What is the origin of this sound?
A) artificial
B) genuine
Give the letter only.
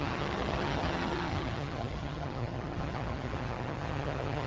A